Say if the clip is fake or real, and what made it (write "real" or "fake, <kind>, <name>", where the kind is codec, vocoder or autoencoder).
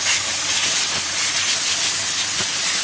real